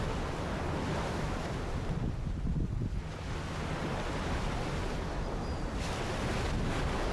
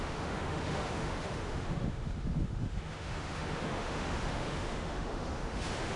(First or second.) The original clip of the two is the first